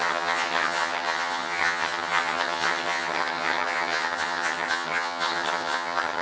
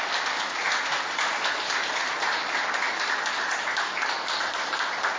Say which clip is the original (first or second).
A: second